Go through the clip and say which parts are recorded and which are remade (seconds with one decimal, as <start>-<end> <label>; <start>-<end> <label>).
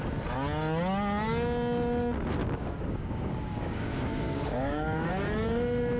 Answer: 0.0-2.4 recorded; 2.4-5.1 remade; 5.1-6.0 recorded